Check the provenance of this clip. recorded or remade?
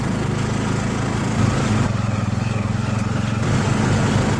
recorded